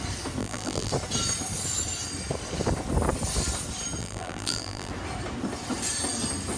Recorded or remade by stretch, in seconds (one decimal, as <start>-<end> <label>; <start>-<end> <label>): 0.0-0.4 recorded; 0.4-0.9 remade; 0.9-4.0 recorded; 4.0-4.9 remade; 4.9-6.6 recorded